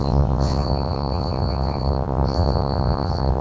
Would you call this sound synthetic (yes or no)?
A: yes